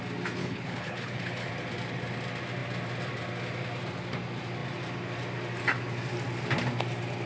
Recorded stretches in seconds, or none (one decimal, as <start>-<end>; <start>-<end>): 0.0-0.4; 1.5-7.3

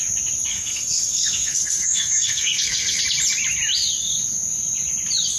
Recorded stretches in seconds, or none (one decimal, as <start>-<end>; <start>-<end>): 0.0-0.5; 3.0-5.4

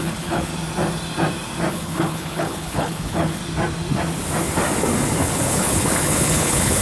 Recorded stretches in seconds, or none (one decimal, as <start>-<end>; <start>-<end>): 0.5-1.7; 3.4-5.2

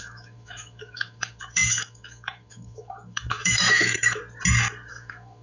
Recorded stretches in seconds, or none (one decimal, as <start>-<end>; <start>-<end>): 4.2-4.9

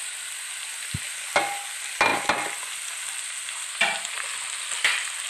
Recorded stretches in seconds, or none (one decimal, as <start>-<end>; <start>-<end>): 0.0-5.3

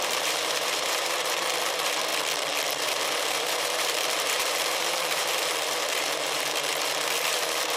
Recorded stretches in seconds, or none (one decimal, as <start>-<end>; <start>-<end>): 2.1-2.8

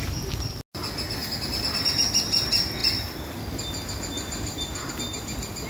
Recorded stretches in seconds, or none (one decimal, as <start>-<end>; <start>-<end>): 0.0-5.7

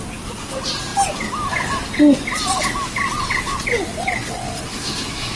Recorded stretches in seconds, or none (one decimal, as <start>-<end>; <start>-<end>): 0.0-4.7